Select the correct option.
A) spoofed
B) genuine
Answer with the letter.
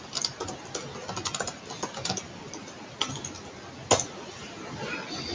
B